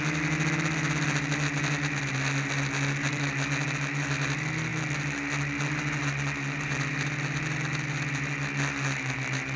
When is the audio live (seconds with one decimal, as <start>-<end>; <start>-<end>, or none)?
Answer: 0.0-9.6